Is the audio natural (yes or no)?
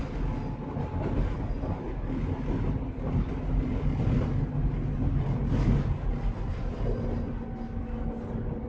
yes